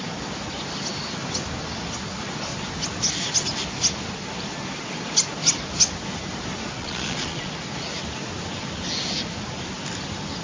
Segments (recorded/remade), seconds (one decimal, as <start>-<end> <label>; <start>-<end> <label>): 0.0-6.8 recorded; 6.8-7.5 remade; 7.5-10.4 recorded